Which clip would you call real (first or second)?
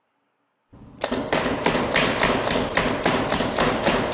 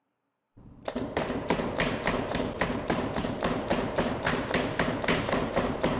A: first